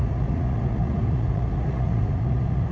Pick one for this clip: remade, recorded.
remade